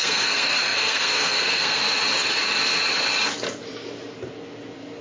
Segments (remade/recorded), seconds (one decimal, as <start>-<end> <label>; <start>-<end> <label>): 0.0-1.8 remade; 1.8-5.0 recorded